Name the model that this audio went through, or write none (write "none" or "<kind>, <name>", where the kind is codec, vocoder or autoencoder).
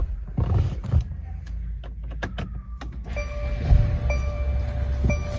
none